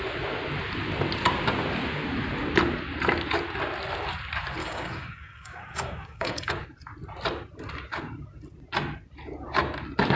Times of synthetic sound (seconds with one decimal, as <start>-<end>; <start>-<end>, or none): 4.6-6.5